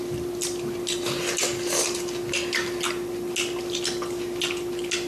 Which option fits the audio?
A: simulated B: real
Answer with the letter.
B